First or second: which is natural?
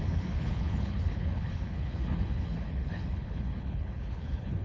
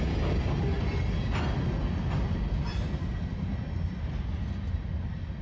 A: second